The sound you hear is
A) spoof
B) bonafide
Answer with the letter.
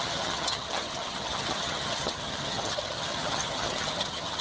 A